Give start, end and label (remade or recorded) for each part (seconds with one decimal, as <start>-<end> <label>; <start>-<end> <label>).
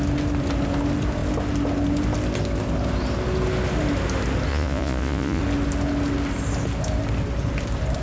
0.0-4.5 recorded; 4.5-5.4 remade; 5.4-8.0 recorded